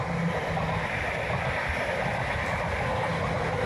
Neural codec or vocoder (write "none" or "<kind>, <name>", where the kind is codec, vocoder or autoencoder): none